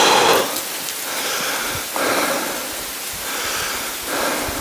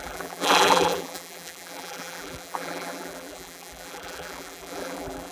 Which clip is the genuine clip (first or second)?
first